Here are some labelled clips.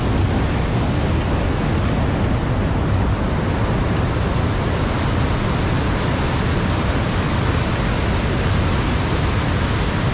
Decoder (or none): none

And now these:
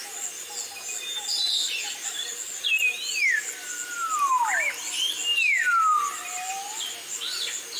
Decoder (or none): none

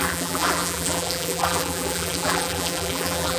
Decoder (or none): vocoder, BigVGAN v2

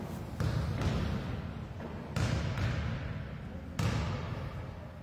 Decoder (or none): none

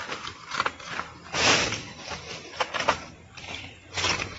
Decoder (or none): none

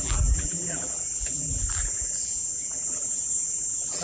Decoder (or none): vocoder, BigVGAN v2